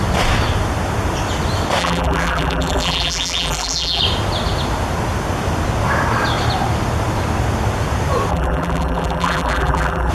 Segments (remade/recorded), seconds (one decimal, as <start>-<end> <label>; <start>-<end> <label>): 0.0-1.8 recorded; 1.8-4.0 remade; 4.0-8.3 recorded; 8.3-10.1 remade